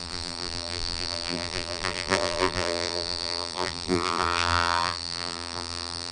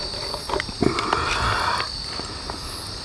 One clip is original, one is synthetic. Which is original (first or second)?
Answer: second